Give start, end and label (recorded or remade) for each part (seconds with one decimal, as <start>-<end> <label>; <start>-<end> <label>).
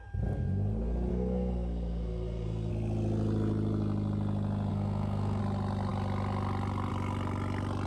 0.0-1.1 recorded; 1.1-2.7 remade; 2.7-4.7 recorded; 4.7-5.4 remade; 5.4-7.9 recorded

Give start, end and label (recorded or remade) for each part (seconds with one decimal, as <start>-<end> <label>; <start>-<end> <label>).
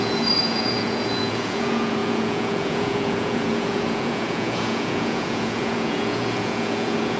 0.0-7.2 remade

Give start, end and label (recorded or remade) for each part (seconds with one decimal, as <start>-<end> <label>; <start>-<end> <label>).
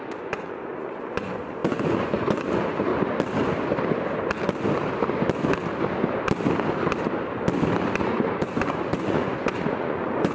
0.0-2.9 remade; 2.9-8.0 recorded; 8.0-10.3 remade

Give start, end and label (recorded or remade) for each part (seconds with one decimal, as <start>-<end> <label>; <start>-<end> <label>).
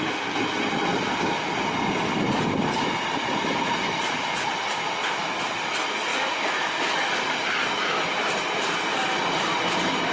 0.0-2.0 recorded; 2.0-4.6 remade; 4.6-6.1 recorded; 6.1-7.1 remade; 7.1-10.1 recorded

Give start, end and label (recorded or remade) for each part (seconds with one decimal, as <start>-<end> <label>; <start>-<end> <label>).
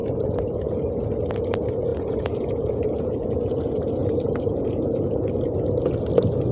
0.0-1.9 recorded; 1.9-5.3 remade; 5.3-6.5 recorded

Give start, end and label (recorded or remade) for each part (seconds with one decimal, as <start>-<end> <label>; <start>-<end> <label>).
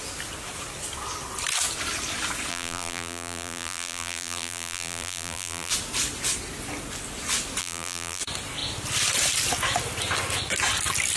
0.0-2.5 recorded; 2.5-5.7 remade; 5.7-7.6 recorded; 7.6-8.2 remade; 8.2-11.2 recorded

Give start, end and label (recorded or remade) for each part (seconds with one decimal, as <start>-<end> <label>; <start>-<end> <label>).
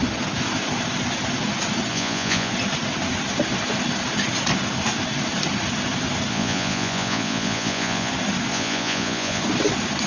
0.0-1.9 recorded; 1.9-2.5 remade; 2.5-6.3 recorded; 6.3-8.1 remade; 8.1-8.5 recorded; 8.5-9.4 remade; 9.4-10.1 recorded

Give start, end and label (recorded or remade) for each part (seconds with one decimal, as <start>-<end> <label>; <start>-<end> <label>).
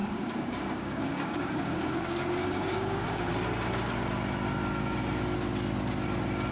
0.0-3.3 remade; 3.3-6.5 recorded